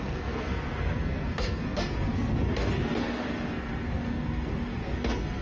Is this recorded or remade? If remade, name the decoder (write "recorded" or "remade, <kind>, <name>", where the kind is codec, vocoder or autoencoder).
remade, codec, SNAC